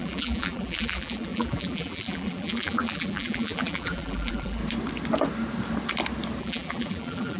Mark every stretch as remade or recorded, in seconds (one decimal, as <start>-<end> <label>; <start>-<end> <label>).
0.0-4.6 remade; 4.6-6.4 recorded; 6.4-7.4 remade